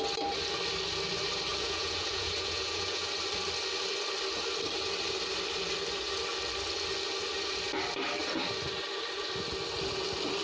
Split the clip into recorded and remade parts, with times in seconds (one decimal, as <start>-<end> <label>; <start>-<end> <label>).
0.0-1.5 recorded; 1.5-3.1 remade; 3.1-10.4 recorded